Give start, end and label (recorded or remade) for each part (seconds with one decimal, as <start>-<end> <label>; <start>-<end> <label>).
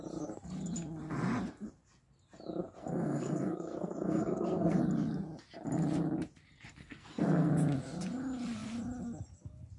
0.0-2.8 recorded; 2.8-4.8 remade; 4.8-6.8 recorded; 6.8-7.5 remade; 7.5-9.8 recorded